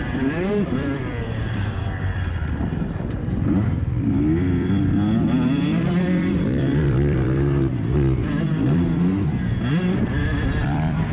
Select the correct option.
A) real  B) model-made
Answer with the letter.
B